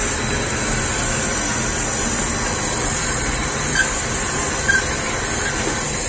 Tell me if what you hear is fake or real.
real